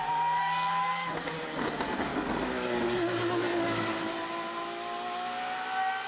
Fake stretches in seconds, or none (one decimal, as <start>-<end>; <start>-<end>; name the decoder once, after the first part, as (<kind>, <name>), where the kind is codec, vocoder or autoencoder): 0.4-1.1 (codec, DAC); 2.1-3.9

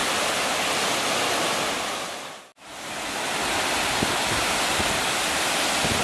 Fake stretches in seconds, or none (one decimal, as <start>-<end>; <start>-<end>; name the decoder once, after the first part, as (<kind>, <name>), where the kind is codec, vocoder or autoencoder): none

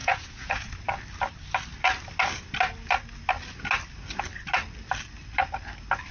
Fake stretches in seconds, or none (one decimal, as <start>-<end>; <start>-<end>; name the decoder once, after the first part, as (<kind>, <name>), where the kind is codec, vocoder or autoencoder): 0.0-0.7 (vocoder, Vocos)

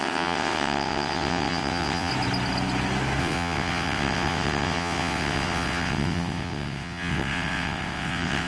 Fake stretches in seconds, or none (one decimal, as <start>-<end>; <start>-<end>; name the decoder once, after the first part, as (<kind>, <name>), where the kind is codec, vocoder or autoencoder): 0.0-2.1 (vocoder, WaveNeXt); 3.2-8.5

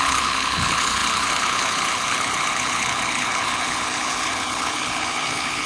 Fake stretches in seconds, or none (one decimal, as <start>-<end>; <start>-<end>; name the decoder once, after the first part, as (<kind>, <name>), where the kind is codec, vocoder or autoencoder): 0.0-5.7 (codec, HILCodec)

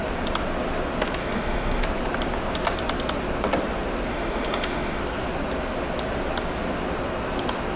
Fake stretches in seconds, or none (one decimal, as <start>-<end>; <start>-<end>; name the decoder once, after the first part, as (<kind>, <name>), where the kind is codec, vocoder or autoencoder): 1.2-1.8 (autoencoder, DAC-VAE); 4.1-5.0